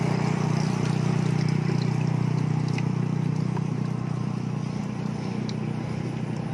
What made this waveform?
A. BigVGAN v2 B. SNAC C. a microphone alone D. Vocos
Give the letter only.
C